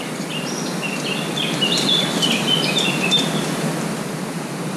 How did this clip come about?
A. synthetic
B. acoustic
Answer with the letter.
B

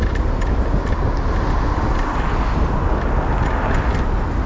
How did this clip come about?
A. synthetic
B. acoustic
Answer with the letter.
B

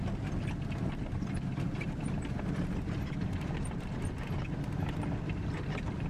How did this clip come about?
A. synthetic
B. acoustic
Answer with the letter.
A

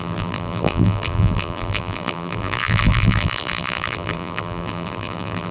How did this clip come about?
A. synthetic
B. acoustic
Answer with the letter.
A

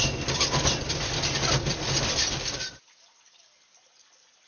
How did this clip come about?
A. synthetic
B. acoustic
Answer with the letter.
A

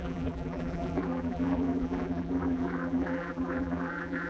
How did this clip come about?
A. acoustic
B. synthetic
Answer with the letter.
B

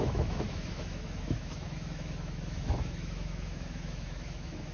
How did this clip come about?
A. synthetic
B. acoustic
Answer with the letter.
A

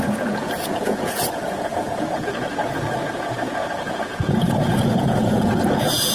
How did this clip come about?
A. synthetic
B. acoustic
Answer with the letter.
A